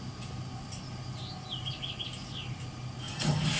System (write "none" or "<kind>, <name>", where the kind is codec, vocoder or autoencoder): none